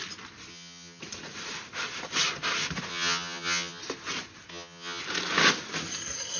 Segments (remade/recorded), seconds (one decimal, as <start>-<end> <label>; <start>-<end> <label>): 0.0-0.5 recorded; 0.5-1.0 remade; 1.0-2.9 recorded; 2.9-3.8 remade; 3.8-4.5 recorded; 4.5-5.0 remade; 5.0-6.4 recorded